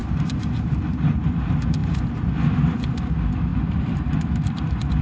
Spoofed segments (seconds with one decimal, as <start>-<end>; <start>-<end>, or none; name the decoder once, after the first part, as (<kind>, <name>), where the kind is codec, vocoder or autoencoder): 0.0-0.8 (vocoder, BigVGAN v2); 1.8-2.3; 3.5-4.1